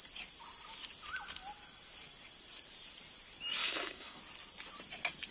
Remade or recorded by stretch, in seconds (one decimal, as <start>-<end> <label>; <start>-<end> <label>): 0.0-3.6 recorded; 3.6-4.2 remade; 4.2-5.3 recorded